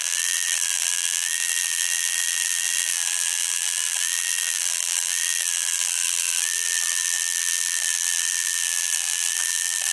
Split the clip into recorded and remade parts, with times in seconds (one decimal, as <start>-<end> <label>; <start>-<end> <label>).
0.0-9.9 remade